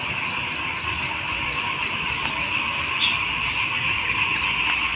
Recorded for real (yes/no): yes